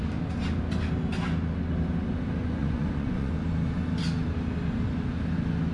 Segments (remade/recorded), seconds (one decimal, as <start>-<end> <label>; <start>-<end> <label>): 0.0-2.6 recorded; 2.6-3.3 remade; 3.3-5.7 recorded